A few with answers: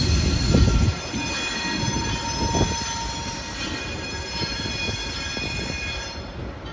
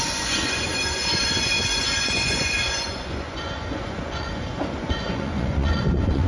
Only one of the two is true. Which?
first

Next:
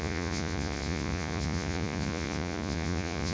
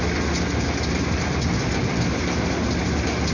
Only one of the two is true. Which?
second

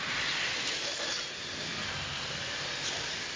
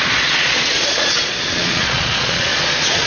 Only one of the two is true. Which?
first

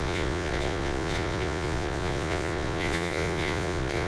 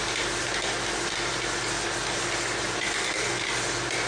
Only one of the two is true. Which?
second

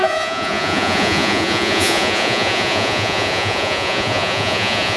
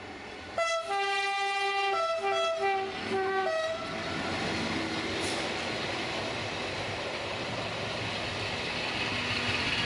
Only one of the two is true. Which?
second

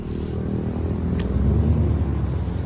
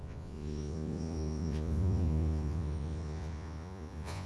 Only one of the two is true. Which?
first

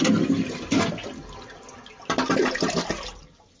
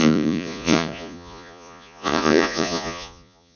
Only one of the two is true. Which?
first